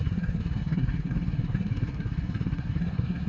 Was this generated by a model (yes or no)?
yes